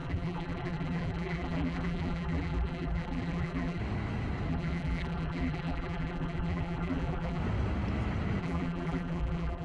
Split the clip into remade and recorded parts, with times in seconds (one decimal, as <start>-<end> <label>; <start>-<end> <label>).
0.0-3.8 remade; 3.8-4.5 recorded; 4.5-7.4 remade; 7.4-8.4 recorded; 8.4-9.6 remade